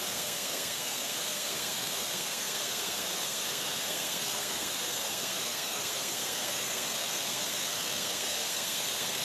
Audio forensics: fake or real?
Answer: fake